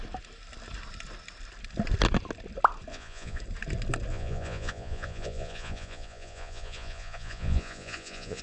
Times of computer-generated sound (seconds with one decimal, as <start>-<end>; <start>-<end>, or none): 2.9-3.4; 4.1-8.4